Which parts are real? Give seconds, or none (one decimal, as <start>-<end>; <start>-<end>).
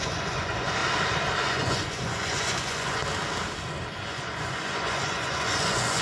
0.8-1.4; 3.0-4.0